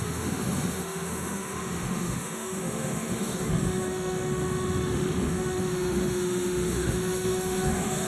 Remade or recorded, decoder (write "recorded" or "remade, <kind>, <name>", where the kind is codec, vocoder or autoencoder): remade, autoencoder, DAC-VAE